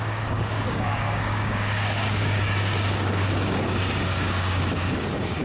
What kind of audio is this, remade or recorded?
remade